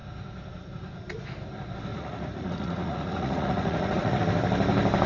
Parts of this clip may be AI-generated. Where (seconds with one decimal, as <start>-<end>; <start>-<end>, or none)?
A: 1.9-4.2